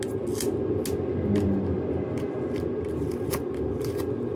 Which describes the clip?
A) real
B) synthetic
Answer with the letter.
A